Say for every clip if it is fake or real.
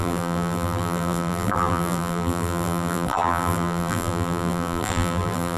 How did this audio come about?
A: fake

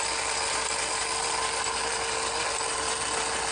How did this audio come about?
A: real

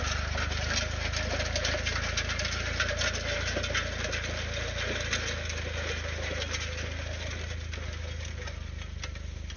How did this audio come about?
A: real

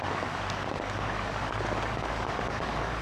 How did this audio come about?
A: fake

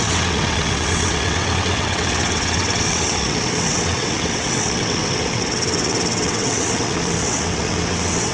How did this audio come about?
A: fake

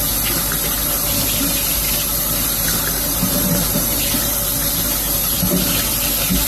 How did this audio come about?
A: real